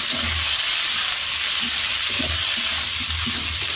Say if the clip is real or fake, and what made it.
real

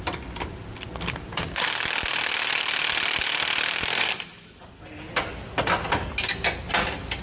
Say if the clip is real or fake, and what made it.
real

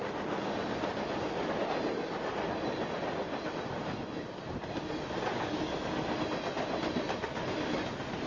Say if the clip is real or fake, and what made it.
real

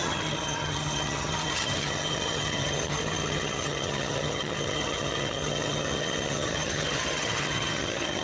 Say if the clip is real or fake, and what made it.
fake, vocoder, HiFi-GAN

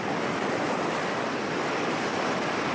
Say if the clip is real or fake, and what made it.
real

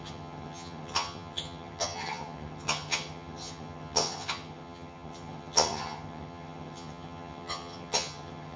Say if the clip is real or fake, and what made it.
fake, vocoder, HiFi-GAN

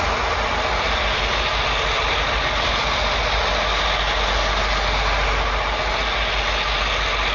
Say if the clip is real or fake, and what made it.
real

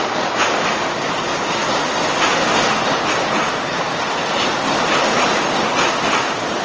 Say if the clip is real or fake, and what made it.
real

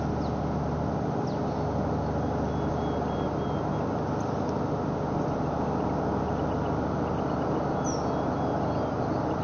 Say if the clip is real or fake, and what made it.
real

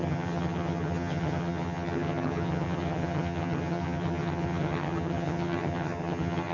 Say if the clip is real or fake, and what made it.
fake, vocoder, HiFi-GAN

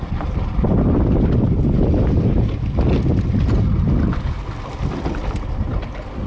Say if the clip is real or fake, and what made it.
real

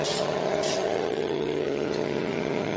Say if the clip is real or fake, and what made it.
fake, vocoder, HiFi-GAN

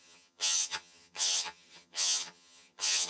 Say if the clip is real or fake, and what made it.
fake, vocoder, HiFi-GAN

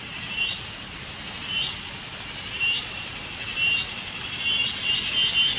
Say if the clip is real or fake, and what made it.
real